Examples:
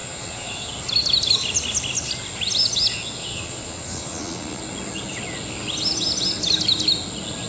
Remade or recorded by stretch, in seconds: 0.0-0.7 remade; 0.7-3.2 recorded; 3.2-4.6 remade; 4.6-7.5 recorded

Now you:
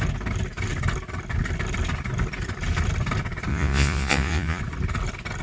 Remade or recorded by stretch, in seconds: 0.0-3.5 recorded; 3.5-4.6 remade; 4.6-5.4 recorded

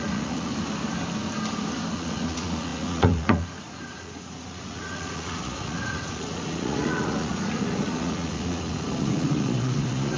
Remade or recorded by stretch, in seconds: 0.0-0.5 remade; 0.5-1.9 recorded; 1.9-10.2 remade